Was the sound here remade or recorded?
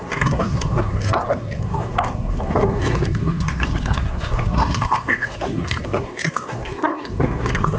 remade